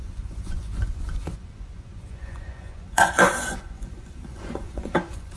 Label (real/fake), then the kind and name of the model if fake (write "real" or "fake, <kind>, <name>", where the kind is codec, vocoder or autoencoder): fake, vocoder, Vocos